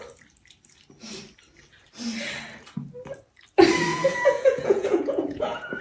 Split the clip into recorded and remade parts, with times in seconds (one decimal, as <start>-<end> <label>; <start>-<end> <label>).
0.0-3.9 recorded; 3.9-5.8 remade